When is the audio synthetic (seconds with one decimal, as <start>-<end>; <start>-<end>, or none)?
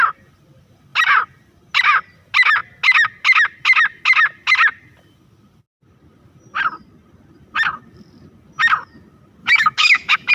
9.4-10.3